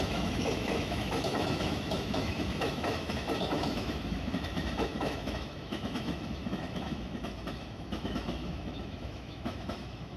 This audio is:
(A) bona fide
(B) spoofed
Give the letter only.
B